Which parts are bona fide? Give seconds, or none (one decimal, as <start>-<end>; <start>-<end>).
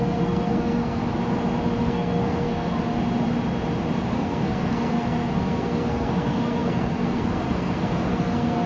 1.0-1.8; 2.7-4.1